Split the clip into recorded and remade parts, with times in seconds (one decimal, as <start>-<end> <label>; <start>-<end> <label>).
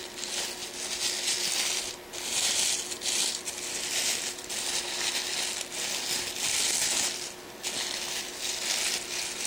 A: 0.0-9.5 recorded